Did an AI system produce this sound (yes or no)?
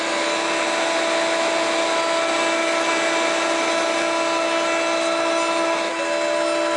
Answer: no